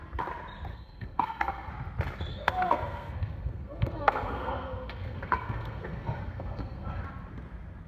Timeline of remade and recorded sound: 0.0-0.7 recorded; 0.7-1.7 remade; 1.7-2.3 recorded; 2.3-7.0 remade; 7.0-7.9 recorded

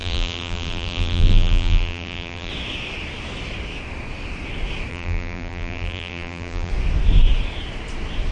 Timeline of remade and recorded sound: 0.0-2.5 remade; 2.5-4.9 recorded; 4.9-6.7 remade; 6.7-8.3 recorded

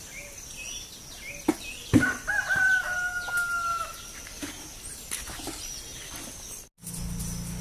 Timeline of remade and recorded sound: 0.0-7.6 recorded

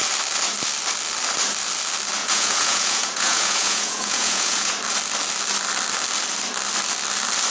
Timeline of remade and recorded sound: 0.0-2.2 recorded; 2.2-4.7 remade; 4.7-7.5 recorded

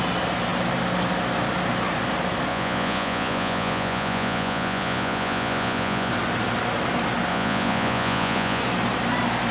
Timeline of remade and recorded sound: 0.0-2.5 recorded; 2.5-6.1 remade; 6.1-7.3 recorded; 7.3-8.6 remade; 8.6-9.5 recorded

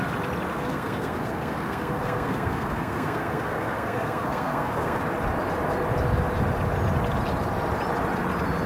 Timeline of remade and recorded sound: 0.0-0.5 recorded; 0.5-5.0 remade; 5.0-8.7 recorded